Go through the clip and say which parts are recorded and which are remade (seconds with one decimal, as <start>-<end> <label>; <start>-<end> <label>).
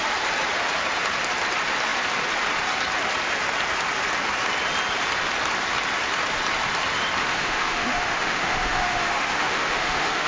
0.0-7.2 recorded; 7.2-10.3 remade